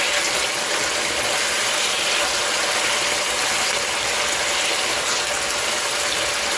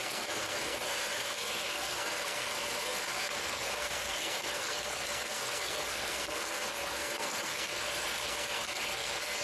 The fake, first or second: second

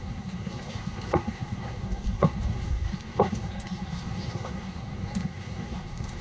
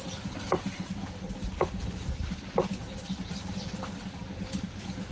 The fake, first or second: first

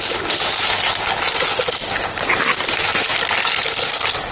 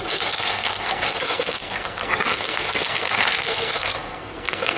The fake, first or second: second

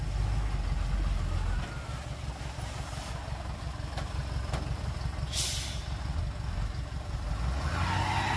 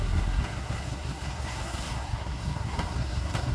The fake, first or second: second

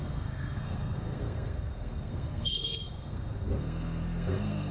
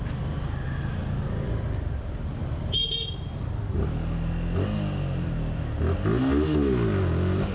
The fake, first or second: first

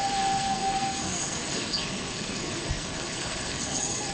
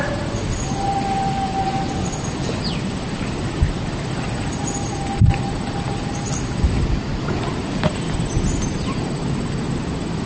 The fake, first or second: first